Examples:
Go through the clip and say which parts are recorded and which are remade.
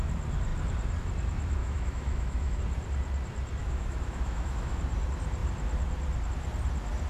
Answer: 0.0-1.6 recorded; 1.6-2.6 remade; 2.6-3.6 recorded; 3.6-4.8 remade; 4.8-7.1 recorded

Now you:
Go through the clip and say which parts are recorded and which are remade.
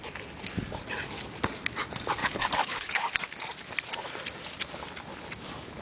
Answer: 0.0-2.2 recorded; 2.2-3.1 remade; 3.1-5.8 recorded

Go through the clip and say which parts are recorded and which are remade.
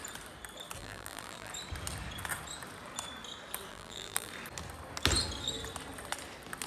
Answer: 0.0-0.8 recorded; 0.8-1.5 remade; 1.5-3.7 recorded; 3.7-4.3 remade; 4.3-6.7 recorded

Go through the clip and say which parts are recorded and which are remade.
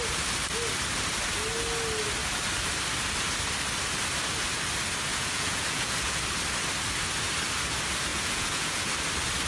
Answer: 0.0-5.1 recorded; 5.1-6.2 remade; 6.2-8.1 recorded; 8.1-8.9 remade; 8.9-9.5 recorded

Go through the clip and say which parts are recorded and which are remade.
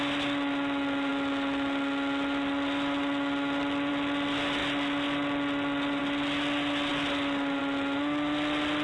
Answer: 0.0-8.8 recorded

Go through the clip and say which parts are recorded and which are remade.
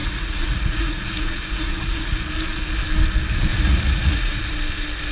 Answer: 0.0-2.1 remade; 2.1-3.5 recorded; 3.5-4.4 remade; 4.4-5.1 recorded